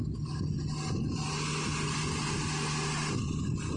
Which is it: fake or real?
real